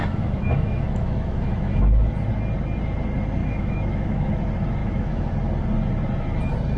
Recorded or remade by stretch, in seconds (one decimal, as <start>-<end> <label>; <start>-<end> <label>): 0.0-2.1 remade; 2.1-3.4 recorded; 3.4-4.3 remade; 4.3-4.8 recorded; 4.8-5.3 remade; 5.3-6.8 recorded